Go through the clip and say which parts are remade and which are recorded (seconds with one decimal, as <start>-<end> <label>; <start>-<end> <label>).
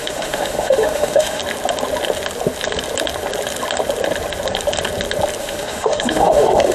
0.0-1.4 remade; 1.4-5.4 recorded; 5.4-6.7 remade